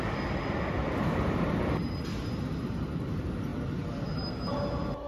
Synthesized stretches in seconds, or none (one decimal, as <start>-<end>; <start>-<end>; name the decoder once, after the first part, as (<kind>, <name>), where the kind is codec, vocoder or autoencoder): none